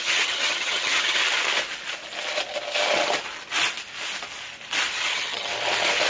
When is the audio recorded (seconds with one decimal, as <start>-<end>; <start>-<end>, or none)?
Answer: 1.2-4.9; 5.5-6.1